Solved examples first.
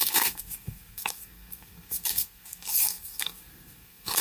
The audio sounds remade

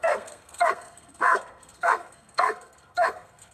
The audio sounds remade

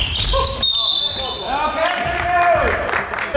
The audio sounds recorded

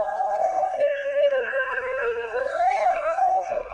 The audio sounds remade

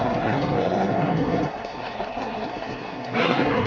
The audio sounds remade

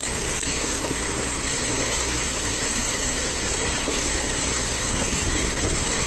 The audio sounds remade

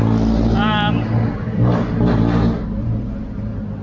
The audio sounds recorded